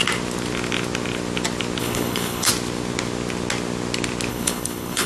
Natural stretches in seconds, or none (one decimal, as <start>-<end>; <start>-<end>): 0.0-1.8; 2.5-4.3